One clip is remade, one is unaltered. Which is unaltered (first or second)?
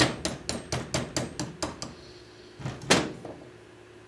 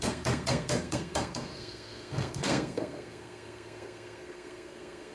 first